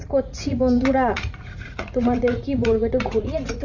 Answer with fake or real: fake